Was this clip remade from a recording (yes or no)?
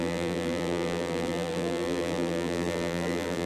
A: yes